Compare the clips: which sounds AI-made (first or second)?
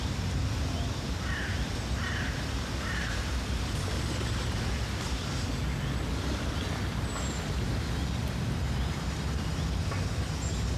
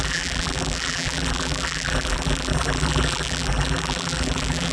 second